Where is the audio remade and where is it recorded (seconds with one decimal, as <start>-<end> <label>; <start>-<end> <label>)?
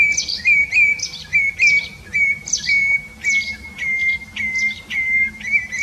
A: 0.0-5.8 recorded